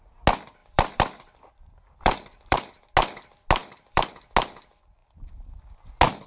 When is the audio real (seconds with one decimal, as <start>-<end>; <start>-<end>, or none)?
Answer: 0.0-0.6; 2.7-3.6; 4.1-6.3